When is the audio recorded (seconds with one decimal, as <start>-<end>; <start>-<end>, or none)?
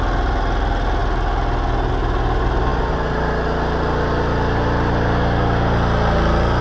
0.0-6.6